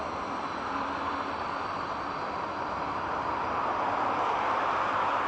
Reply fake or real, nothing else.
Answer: fake